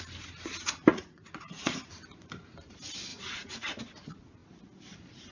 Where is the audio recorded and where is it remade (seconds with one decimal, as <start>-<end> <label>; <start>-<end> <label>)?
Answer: 0.0-0.9 recorded; 0.9-1.9 remade; 1.9-3.1 recorded; 3.1-3.8 remade; 3.8-5.3 recorded